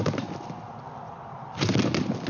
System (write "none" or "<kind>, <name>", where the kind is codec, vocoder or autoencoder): none